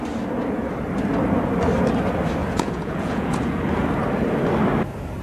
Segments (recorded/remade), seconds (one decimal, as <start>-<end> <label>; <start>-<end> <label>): 0.0-2.4 recorded; 2.4-3.6 remade; 3.6-5.2 recorded